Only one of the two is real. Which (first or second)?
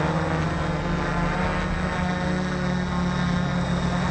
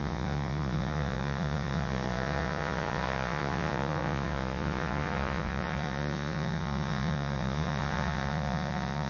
first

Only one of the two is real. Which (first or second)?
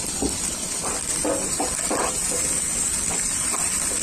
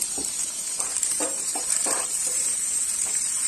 first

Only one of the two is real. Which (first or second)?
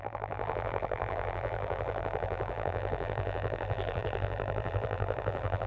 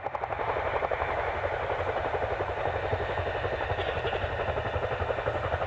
second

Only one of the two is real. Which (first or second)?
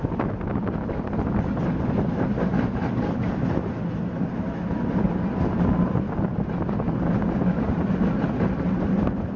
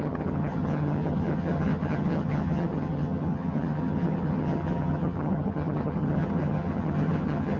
first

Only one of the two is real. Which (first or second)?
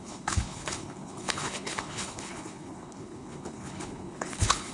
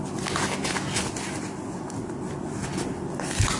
second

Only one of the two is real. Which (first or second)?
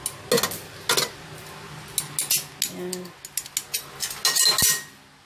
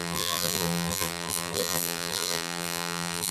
first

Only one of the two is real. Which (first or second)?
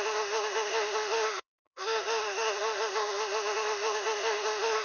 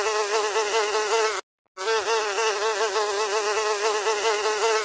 second